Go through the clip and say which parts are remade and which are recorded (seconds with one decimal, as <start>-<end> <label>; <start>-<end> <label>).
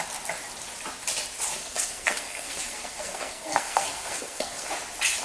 0.0-1.6 recorded; 1.6-4.7 remade; 4.7-5.2 recorded